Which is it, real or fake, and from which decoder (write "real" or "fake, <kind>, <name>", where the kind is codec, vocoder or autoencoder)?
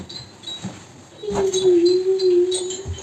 real